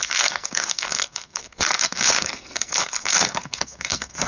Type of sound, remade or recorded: remade